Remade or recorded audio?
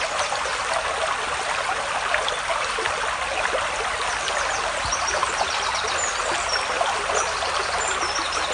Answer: recorded